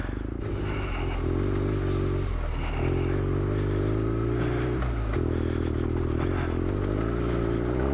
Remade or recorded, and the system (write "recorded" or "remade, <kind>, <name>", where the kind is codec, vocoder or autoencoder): recorded